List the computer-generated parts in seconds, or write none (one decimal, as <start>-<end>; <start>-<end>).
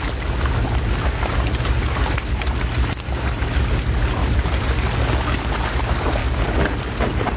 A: 4.2-5.5; 6.2-6.8